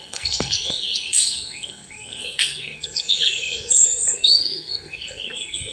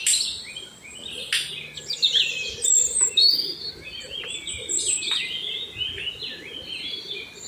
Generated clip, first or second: first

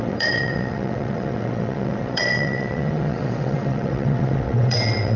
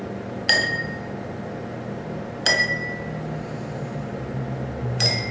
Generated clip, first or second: first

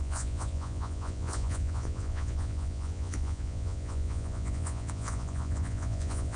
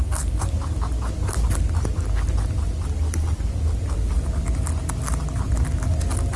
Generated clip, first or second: first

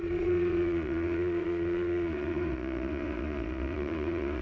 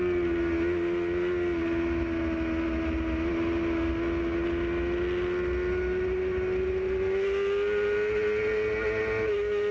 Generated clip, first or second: first